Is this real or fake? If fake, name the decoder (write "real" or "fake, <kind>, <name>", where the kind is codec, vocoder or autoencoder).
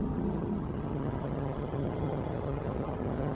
fake, vocoder, HiFi-GAN